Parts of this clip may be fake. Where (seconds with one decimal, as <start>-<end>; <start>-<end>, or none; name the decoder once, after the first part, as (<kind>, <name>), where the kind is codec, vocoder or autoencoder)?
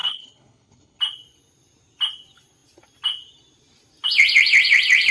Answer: 0.0-1.0 (codec, HILCodec)